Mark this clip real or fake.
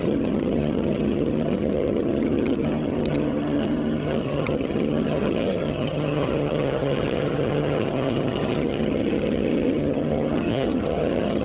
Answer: fake